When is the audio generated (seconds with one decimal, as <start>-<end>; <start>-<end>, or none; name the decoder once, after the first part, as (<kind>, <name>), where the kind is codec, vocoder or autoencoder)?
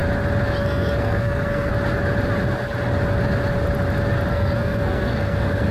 0.6-1.7 (codec, SNAC); 4.3-5.7